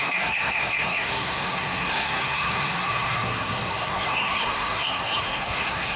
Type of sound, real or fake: fake